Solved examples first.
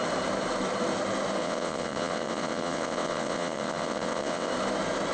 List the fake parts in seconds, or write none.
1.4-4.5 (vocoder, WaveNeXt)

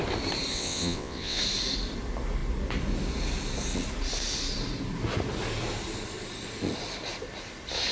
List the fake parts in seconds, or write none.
0.5-1.4 (vocoder, WaveNeXt)

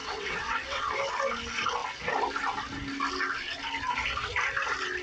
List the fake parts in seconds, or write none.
0.0-0.9 (vocoder, WaveNeXt)

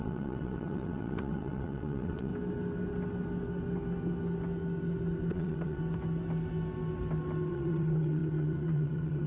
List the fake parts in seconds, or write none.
0.0-2.3 (vocoder, WaveNeXt); 5.3-5.8; 7.5-9.3

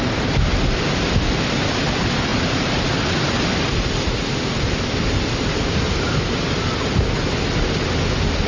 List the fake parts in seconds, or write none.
none

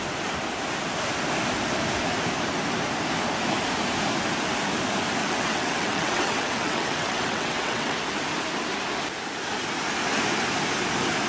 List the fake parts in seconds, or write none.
5.2-8.0 (vocoder, WaveNeXt)

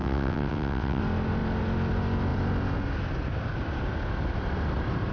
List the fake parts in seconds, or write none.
0.0-1.0 (vocoder, WaveNeXt)